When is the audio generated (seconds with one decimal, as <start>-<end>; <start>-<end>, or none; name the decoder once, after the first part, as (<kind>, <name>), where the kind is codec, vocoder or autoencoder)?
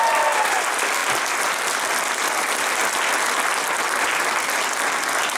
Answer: none